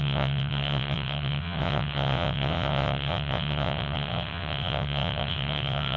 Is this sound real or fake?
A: fake